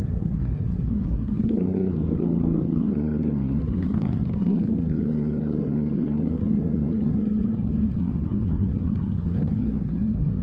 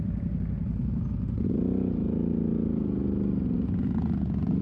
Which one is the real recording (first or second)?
second